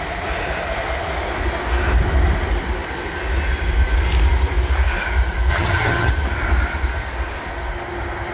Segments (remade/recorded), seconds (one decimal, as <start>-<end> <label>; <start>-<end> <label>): 0.0-5.5 recorded; 5.5-6.1 remade; 6.1-8.3 recorded